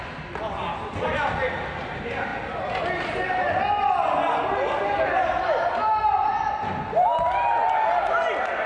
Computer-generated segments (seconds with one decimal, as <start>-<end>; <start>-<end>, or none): none